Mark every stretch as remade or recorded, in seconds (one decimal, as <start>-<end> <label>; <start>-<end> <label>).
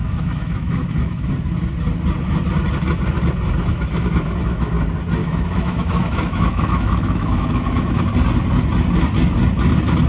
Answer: 0.0-1.3 remade; 1.3-3.7 recorded; 3.7-4.7 remade; 4.7-5.2 recorded; 5.2-8.0 remade; 8.0-10.1 recorded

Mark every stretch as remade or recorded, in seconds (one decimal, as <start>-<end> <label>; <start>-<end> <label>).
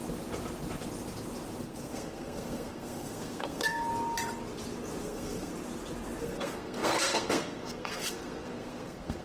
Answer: 0.0-1.6 recorded; 1.6-3.9 remade; 3.9-5.0 recorded; 5.0-5.5 remade; 5.5-6.2 recorded; 6.2-9.2 remade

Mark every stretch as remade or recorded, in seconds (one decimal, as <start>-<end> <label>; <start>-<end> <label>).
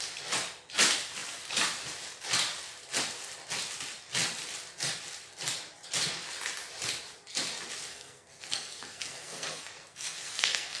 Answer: 0.0-7.9 recorded; 7.9-10.8 remade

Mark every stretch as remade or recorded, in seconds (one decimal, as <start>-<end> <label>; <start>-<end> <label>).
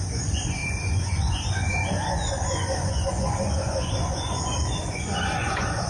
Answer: 0.0-5.9 remade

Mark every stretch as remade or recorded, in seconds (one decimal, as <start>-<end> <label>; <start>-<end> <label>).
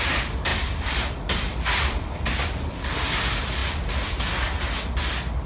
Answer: 0.0-0.5 recorded; 0.5-2.7 remade; 2.7-3.6 recorded; 3.6-4.2 remade; 4.2-5.5 recorded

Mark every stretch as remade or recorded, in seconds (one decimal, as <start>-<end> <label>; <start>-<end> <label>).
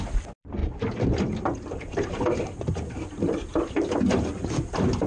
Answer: 0.0-5.1 recorded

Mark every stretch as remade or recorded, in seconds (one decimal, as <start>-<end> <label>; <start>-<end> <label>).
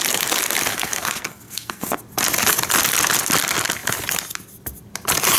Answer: 0.0-0.7 recorded; 0.7-2.0 remade; 2.0-5.4 recorded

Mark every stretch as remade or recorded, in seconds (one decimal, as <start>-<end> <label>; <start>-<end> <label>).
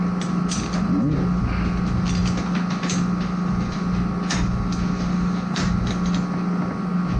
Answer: 0.0-7.2 recorded